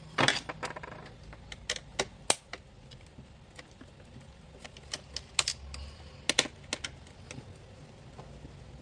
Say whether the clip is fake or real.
real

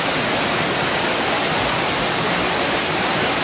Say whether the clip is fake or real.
real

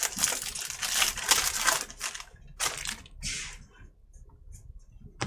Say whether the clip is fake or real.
real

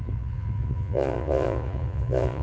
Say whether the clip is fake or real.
fake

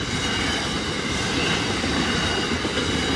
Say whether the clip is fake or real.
real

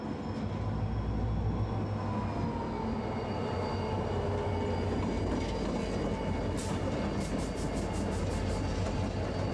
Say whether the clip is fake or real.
real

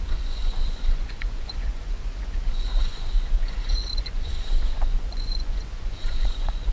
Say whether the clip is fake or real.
fake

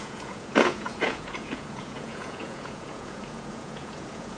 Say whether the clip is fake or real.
fake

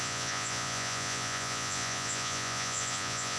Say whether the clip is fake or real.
fake